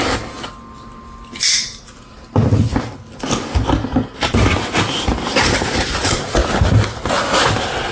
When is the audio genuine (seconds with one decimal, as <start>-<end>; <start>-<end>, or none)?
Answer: 0.0-7.9